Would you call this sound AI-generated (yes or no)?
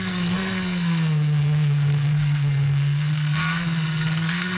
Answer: yes